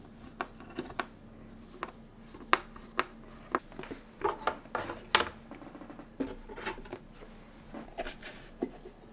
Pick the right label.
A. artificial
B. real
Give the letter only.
B